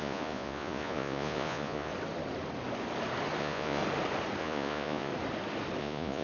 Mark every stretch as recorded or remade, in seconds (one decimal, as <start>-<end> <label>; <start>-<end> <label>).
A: 0.0-1.9 remade; 1.9-3.4 recorded; 3.4-3.8 remade; 3.8-4.4 recorded; 4.4-5.1 remade; 5.1-5.8 recorded; 5.8-6.2 remade